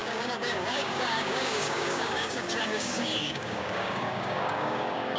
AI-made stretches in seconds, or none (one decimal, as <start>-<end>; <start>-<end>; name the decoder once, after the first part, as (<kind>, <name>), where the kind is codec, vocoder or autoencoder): 0.0-5.2 (codec, DAC)